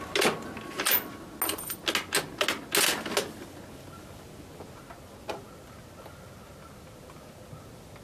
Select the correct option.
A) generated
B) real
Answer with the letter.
B